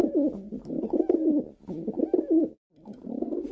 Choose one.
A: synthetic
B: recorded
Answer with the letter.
B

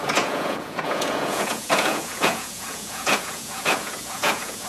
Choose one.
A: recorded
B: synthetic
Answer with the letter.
B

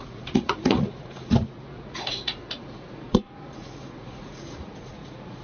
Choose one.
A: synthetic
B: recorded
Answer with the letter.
A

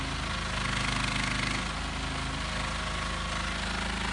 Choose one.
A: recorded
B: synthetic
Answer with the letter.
A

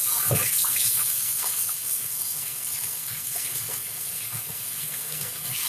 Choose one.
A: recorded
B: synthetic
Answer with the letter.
B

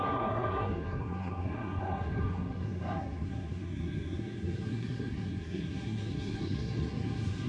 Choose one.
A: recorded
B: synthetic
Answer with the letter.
B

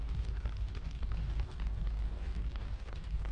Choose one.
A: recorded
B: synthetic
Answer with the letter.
B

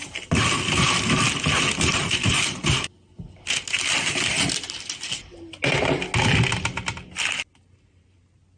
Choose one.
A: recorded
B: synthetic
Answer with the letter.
A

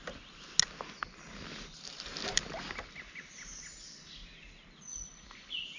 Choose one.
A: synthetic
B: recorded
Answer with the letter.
B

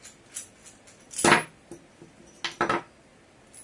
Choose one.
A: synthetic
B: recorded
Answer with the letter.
B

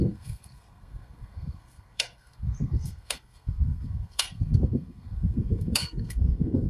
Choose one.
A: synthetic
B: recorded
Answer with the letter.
A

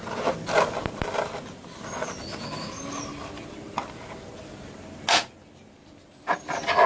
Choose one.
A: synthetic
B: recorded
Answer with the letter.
B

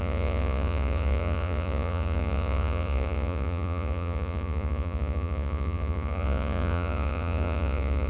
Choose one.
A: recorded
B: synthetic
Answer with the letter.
B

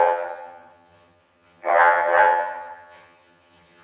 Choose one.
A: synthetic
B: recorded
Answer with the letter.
A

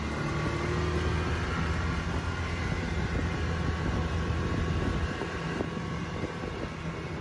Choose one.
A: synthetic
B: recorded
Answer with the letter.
B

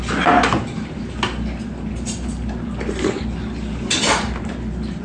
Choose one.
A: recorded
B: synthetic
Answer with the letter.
A